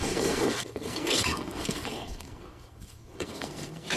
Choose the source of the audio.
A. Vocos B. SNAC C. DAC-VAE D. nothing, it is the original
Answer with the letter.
B